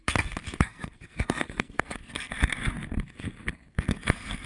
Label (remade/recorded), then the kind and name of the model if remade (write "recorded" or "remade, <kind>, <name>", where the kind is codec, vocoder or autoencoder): remade, codec, SNAC